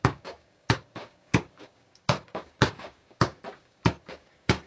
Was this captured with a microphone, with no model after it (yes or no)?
no